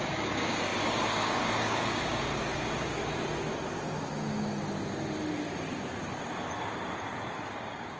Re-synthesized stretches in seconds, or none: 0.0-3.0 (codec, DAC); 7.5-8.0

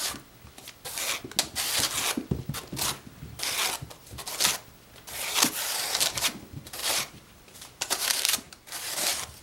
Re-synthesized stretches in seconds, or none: 6.8-9.4 (vocoder, BigVGAN v2)

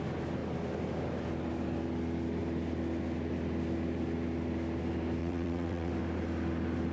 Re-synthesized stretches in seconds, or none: 5.2-5.9 (vocoder, WaveNeXt)